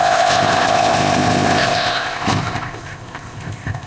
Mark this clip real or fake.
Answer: fake